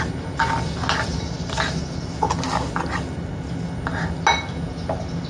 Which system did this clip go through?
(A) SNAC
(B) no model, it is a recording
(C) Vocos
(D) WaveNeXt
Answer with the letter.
B